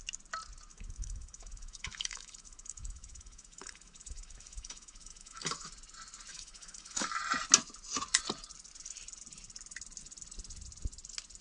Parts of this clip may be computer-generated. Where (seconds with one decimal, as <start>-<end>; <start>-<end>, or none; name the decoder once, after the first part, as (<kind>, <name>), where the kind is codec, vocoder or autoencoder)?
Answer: 0.7-5.7 (autoencoder, DAC-VAE); 6.3-7.2